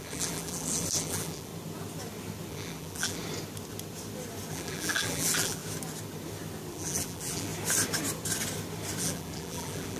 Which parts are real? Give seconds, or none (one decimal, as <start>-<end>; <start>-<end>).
1.5-2.5; 3.2-4.5; 5.6-6.7; 7.5-9.0